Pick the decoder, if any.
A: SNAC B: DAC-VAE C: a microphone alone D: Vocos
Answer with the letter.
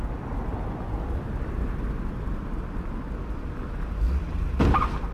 C